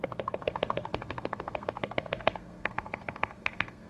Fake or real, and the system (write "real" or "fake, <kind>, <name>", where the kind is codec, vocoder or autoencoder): fake, codec, SNAC